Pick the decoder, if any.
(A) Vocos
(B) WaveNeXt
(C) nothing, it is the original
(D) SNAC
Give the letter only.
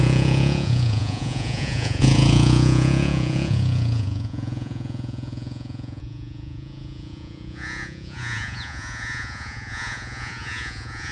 A